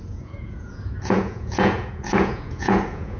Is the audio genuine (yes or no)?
no